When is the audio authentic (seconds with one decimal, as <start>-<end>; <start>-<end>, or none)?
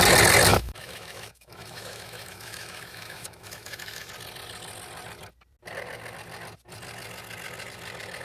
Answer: 0.0-0.5; 4.1-8.2